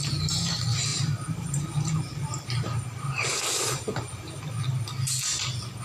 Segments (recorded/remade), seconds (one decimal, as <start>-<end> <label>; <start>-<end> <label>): 0.0-0.9 recorded; 0.9-4.4 remade; 4.4-5.8 recorded